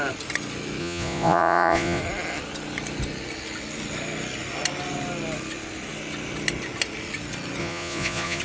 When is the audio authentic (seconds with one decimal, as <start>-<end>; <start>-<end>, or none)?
0.0-0.8; 2.0-7.6